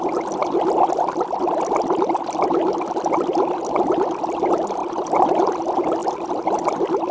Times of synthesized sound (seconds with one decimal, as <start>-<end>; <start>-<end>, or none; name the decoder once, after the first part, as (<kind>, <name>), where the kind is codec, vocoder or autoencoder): none